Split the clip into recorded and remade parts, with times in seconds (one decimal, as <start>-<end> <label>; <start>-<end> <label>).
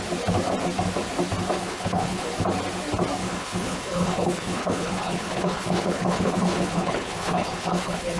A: 0.0-1.6 recorded; 1.6-2.3 remade; 2.3-3.2 recorded; 3.2-8.2 remade